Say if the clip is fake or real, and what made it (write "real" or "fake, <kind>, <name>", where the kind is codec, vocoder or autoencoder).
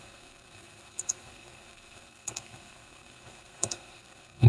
fake, codec, SNAC